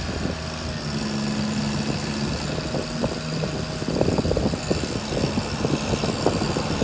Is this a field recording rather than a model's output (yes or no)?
yes